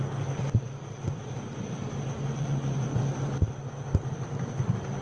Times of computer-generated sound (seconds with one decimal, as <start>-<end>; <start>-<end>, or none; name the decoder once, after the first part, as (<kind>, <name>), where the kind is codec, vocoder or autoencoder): 2.3-3.0 (vocoder, Vocos)

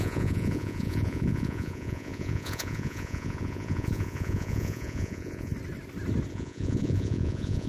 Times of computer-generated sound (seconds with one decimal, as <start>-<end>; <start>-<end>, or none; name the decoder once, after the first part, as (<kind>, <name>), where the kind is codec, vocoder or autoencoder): 0.0-5.5 (vocoder, Vocos); 6.3-7.7

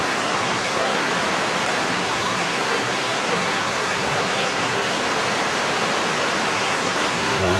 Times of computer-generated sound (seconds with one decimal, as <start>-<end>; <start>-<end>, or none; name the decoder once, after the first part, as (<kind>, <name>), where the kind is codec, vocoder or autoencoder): 0.0-1.1 (codec, SNAC); 1.9-5.0; 6.5-7.6

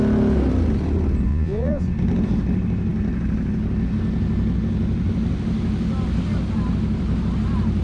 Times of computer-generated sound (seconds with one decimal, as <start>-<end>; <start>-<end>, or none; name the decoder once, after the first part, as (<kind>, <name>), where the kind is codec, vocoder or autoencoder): 1.3-1.8 (vocoder, Vocos)

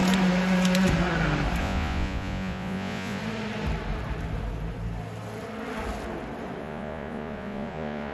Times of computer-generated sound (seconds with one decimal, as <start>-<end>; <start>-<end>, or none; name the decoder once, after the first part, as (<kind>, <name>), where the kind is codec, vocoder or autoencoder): 1.6-3.2 (vocoder, Vocos); 6.6-8.1

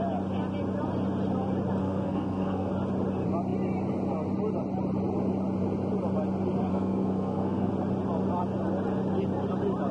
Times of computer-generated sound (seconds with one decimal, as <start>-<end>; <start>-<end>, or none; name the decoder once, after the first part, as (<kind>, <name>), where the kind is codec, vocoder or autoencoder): 1.8-2.7 (codec, SNAC); 6.7-7.7

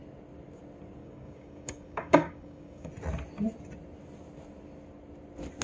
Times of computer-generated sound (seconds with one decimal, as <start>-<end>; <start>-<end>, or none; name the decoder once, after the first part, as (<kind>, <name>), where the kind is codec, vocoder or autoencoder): 1.0-2.9 (codec, DAC)

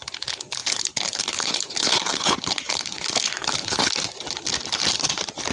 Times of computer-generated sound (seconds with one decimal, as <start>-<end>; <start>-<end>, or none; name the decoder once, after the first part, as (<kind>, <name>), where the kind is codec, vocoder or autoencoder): 0.6-3.9 (codec, HILCodec)